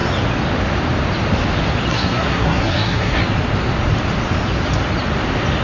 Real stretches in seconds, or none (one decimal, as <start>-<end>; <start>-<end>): 0.0-1.9; 3.2-5.6